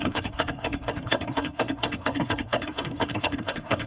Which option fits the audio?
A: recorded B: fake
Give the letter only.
B